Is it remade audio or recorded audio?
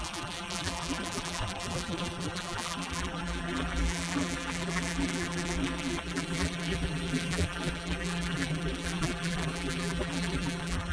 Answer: remade